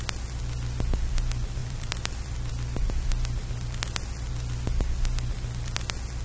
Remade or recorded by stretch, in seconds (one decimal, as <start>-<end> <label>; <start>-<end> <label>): 0.0-1.6 recorded; 1.6-2.9 remade; 2.9-6.2 recorded